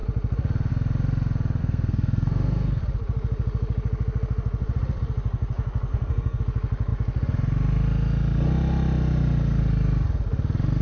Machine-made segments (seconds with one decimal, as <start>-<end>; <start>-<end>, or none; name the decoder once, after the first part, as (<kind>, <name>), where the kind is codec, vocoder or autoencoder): 1.6-2.8 (codec, SNAC); 5.9-6.4